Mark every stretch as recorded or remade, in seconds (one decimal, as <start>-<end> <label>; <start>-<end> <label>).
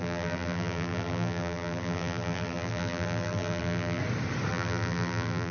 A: 0.0-4.0 remade; 4.0-4.5 recorded; 4.5-5.5 remade